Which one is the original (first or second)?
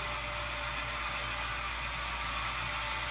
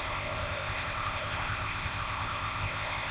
first